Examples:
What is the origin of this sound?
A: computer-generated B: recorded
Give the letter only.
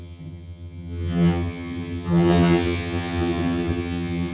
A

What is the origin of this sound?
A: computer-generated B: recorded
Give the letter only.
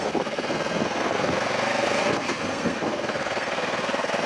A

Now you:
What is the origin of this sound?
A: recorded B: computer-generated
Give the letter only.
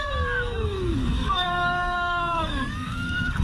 B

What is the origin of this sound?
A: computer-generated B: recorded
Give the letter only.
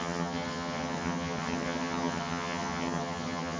A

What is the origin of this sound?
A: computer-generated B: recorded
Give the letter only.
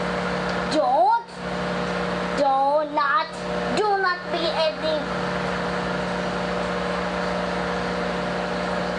B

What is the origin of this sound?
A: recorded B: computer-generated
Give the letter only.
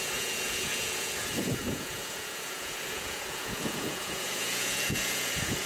B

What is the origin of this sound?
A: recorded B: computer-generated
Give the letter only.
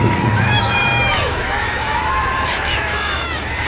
B